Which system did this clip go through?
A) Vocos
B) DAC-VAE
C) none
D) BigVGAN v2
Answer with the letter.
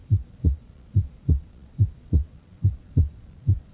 A